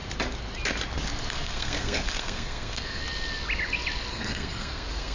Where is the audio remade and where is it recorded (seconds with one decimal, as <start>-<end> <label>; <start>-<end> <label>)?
0.0-1.3 recorded; 1.3-3.0 remade; 3.0-4.1 recorded; 4.1-5.1 remade